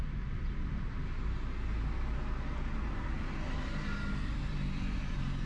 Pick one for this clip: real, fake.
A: real